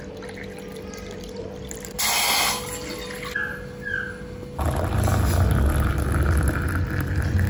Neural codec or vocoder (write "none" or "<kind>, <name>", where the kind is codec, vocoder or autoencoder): none